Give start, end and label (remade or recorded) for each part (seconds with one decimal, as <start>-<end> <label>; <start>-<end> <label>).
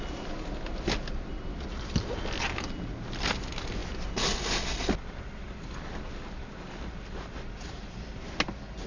0.0-8.9 recorded